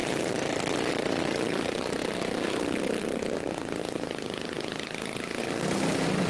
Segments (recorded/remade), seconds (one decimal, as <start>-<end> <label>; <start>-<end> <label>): 0.0-0.9 remade; 0.9-3.8 recorded; 3.8-5.4 remade; 5.4-6.3 recorded